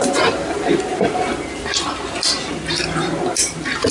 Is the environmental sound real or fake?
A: fake